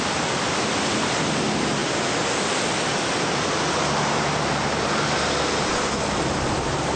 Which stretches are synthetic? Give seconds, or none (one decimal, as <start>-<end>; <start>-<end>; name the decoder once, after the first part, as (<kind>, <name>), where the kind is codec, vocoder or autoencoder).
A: none